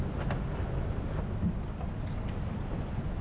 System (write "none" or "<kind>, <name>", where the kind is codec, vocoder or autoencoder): none